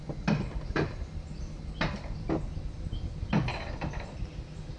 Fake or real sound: real